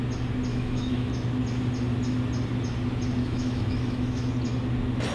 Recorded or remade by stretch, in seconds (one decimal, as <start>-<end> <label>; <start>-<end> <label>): 0.0-0.5 recorded; 0.5-1.1 remade; 1.1-3.2 recorded; 3.2-4.3 remade; 4.3-5.1 recorded